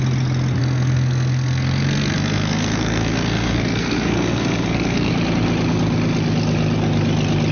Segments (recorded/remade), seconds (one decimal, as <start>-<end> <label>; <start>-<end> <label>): 0.0-0.6 recorded; 0.6-5.1 remade; 5.1-7.5 recorded